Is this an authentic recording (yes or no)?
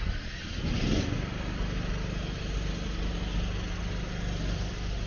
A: yes